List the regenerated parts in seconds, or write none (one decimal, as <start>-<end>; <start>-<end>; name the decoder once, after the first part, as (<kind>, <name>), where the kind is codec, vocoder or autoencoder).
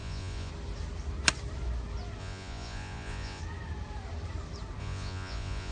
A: 0.0-0.5 (vocoder, Vocos); 2.2-3.4; 4.8-5.7